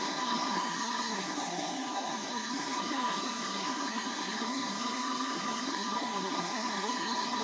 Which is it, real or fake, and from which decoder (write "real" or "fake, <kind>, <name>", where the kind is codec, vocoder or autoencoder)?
fake, codec, SNAC